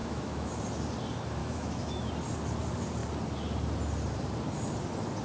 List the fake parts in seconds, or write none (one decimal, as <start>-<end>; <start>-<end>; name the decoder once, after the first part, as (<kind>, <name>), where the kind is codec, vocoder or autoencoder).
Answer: 0.0-0.5 (autoencoder, DAC-VAE); 1.4-2.1